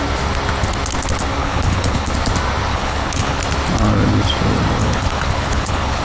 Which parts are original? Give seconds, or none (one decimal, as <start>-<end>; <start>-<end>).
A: 0.0-1.4; 2.1-2.7; 3.4-4.8